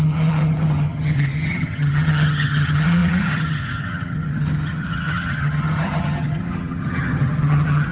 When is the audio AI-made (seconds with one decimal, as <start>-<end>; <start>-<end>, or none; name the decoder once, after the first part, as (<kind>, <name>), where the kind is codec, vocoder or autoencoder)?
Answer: 0.0-7.9 (vocoder, HiFi-GAN)